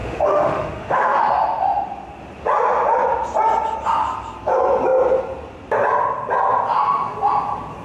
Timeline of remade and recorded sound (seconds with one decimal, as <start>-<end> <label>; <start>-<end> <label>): 0.0-1.3 remade; 1.3-7.8 recorded